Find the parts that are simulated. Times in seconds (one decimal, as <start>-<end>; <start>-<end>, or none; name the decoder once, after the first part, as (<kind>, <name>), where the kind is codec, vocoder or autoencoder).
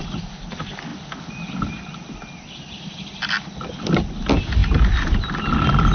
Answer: none